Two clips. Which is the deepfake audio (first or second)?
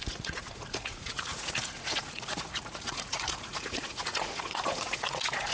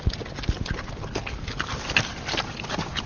first